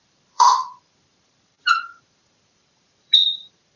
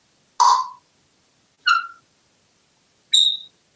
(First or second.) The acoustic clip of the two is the second